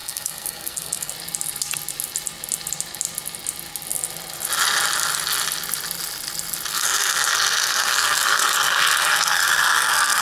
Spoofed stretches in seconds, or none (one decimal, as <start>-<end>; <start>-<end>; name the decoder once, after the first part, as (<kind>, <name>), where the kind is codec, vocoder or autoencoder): 0.0-1.1 (codec, SNAC); 6.7-10.2